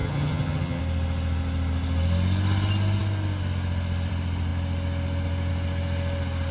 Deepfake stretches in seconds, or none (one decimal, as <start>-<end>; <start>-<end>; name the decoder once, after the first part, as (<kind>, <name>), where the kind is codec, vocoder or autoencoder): 0.0-0.8 (vocoder, HiFi-GAN)